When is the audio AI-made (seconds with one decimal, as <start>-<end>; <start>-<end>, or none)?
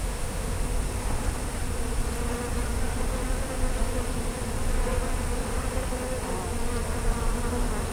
0.0-0.6